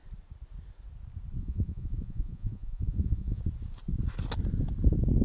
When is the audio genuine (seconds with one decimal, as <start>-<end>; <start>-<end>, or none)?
0.0-1.4; 3.4-5.2